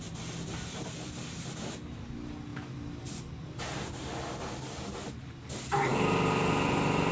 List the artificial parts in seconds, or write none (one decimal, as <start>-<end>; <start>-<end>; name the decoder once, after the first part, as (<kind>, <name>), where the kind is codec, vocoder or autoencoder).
none

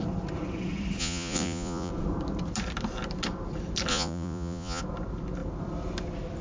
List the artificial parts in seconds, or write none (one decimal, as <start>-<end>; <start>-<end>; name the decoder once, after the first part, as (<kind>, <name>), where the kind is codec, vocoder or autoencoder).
1.0-1.9 (vocoder, Vocos); 3.9-4.8

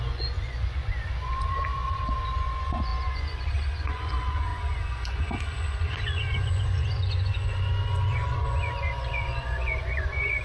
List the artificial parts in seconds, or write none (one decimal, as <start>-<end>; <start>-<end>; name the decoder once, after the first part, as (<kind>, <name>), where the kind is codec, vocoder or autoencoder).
0.0-10.4 (vocoder, Vocos)

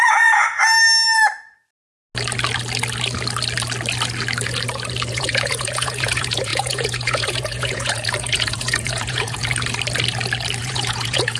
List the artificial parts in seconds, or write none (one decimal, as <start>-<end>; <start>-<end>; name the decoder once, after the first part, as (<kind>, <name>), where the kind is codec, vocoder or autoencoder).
0.0-0.4 (vocoder, Vocos); 5.1-9.4; 10.6-11.4